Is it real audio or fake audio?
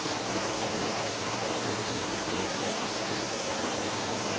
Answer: fake